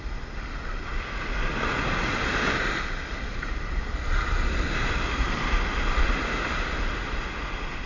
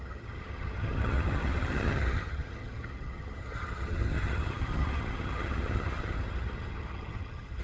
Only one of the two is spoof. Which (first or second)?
second